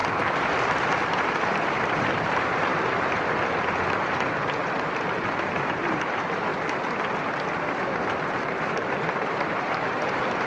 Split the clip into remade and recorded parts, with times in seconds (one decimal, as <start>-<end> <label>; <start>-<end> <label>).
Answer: 0.0-1.4 recorded; 1.4-2.7 remade; 2.7-4.8 recorded; 4.8-6.5 remade; 6.5-8.3 recorded; 8.3-10.5 remade